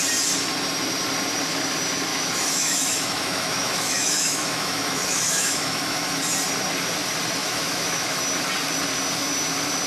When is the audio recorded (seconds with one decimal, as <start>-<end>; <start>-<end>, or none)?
0.0-2.1; 6.2-7.4; 8.2-9.9